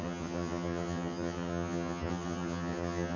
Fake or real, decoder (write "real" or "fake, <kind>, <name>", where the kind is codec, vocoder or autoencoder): fake, vocoder, HiFi-GAN